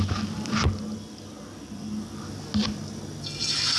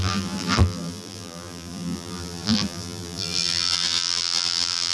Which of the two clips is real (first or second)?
first